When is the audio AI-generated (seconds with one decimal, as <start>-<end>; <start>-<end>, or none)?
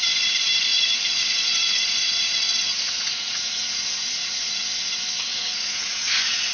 0.7-4.6; 5.3-6.5